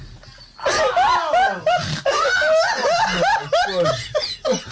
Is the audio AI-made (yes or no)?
no